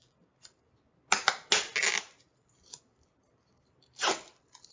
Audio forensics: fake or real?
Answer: real